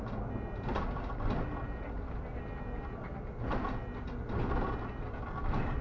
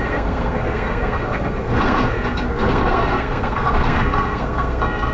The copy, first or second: second